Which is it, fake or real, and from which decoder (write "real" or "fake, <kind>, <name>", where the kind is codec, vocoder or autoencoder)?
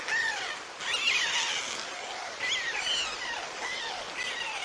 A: real